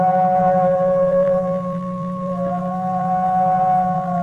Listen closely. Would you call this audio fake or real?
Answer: fake